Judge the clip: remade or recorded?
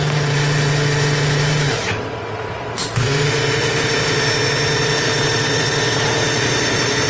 remade